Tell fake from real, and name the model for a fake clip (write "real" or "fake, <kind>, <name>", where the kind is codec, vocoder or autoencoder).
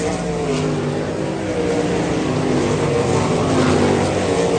real